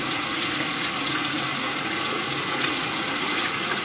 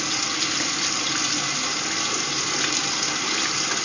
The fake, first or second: first